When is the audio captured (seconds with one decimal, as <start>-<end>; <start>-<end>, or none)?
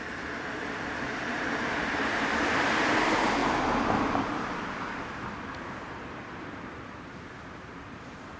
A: none